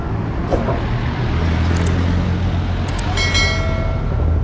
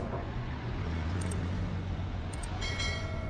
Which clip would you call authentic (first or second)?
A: first